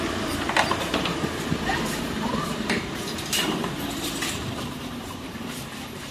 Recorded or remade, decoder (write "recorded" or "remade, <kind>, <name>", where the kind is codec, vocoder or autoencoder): remade, vocoder, BigVGAN v2